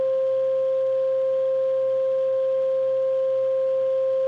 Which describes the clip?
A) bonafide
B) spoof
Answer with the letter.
A